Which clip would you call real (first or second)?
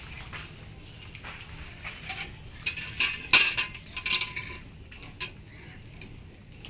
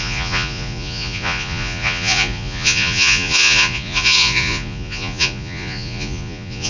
first